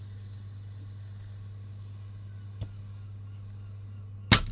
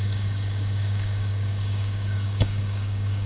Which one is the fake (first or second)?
second